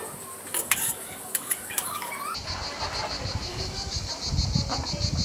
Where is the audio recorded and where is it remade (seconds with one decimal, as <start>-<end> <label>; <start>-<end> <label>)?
0.0-0.5 recorded; 0.5-2.1 remade; 2.1-3.5 recorded; 3.5-4.1 remade; 4.1-5.2 recorded